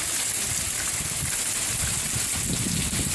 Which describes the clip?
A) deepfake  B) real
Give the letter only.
B